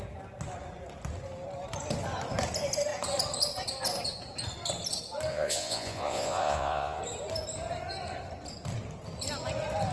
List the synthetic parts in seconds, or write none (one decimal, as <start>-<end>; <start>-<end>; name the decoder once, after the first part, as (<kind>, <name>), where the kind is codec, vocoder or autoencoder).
5.3-7.0 (vocoder, Vocos)